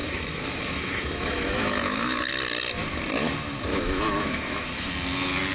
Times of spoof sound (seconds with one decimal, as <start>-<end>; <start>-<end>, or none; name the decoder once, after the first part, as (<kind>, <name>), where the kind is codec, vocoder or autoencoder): 0.0-2.3 (autoencoder, DAC-VAE); 3.7-4.9